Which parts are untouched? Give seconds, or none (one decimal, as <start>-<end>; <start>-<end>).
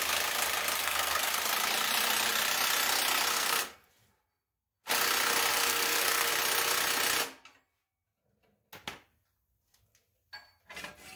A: 0.0-0.8; 1.3-3.3; 3.9-5.5; 6.3-11.2